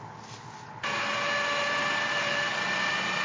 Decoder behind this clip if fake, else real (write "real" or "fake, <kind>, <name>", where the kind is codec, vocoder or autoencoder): real